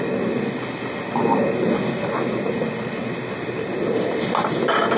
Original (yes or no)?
yes